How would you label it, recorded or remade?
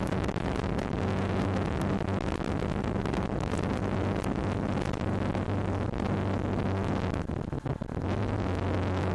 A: recorded